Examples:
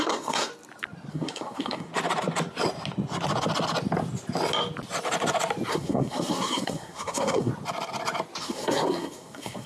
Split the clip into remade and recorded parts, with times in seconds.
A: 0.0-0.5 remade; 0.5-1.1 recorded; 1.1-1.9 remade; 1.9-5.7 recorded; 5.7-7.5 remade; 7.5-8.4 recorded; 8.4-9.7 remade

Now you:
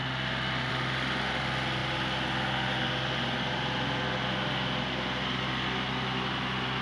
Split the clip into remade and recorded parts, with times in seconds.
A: 0.0-6.8 recorded

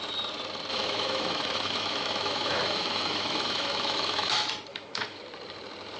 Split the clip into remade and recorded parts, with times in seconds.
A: 0.0-0.7 recorded; 0.7-4.3 remade; 4.3-4.7 recorded; 4.7-5.2 remade; 5.2-6.0 recorded

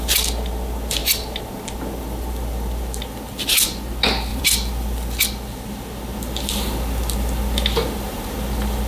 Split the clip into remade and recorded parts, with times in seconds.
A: 0.0-4.3 recorded; 4.3-5.2 remade; 5.2-8.9 recorded